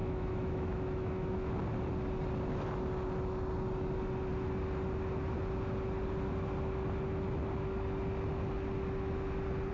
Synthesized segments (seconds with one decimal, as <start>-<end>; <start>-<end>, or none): 0.0-1.5